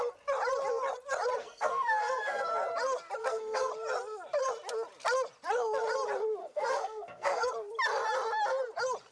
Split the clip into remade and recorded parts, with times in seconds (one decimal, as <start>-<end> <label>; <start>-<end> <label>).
0.0-1.4 recorded; 1.4-2.5 remade; 2.5-3.2 recorded; 3.2-3.7 remade; 3.7-6.4 recorded; 6.4-7.5 remade; 7.5-9.1 recorded

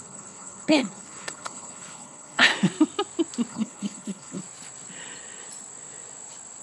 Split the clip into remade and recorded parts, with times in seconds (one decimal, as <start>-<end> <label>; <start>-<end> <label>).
0.0-2.5 remade; 2.5-3.5 recorded; 3.5-4.4 remade; 4.4-6.6 recorded